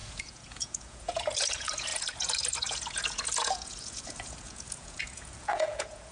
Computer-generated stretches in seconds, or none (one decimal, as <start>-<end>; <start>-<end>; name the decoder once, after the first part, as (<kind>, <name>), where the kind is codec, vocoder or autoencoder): 0.0-6.1 (vocoder, Vocos)